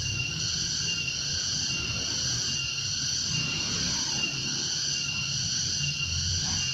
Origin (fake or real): fake